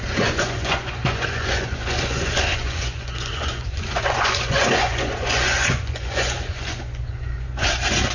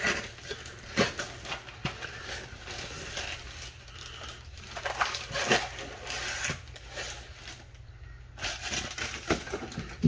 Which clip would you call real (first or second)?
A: second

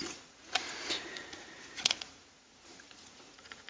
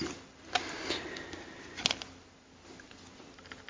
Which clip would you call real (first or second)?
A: second